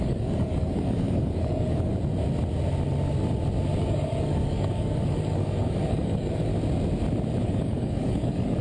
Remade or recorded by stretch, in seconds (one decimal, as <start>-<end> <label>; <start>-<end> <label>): 0.0-1.9 remade; 1.9-3.8 recorded; 3.8-6.5 remade; 6.5-7.4 recorded; 7.4-8.6 remade